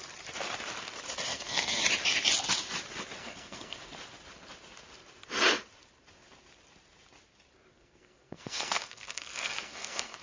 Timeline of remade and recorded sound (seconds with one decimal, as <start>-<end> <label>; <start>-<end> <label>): 0.0-1.3 recorded; 1.3-1.8 remade; 1.8-3.2 recorded; 3.2-3.8 remade; 3.8-7.7 recorded; 7.7-10.2 remade